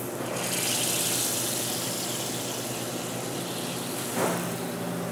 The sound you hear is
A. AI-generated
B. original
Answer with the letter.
B